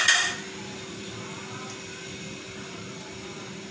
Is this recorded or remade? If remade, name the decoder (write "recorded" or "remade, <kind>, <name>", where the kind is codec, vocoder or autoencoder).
recorded